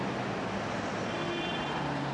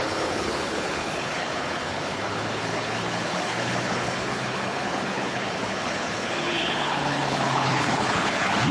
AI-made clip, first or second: second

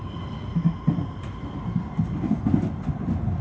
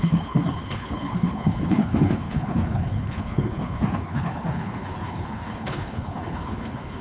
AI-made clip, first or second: second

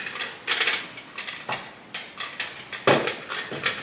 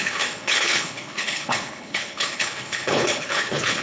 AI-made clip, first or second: second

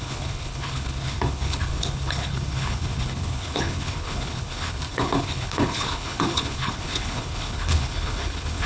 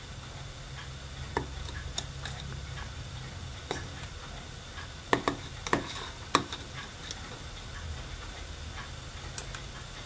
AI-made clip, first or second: first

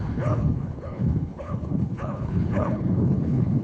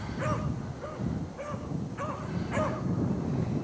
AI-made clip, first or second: first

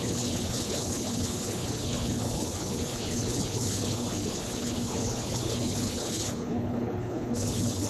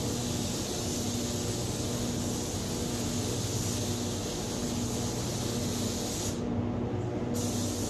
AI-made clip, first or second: first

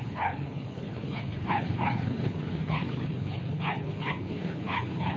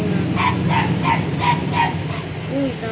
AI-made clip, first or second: first